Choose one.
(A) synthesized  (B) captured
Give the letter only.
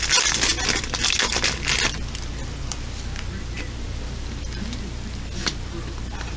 B